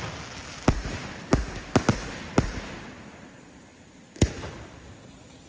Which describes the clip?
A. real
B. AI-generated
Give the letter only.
A